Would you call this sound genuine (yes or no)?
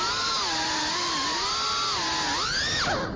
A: yes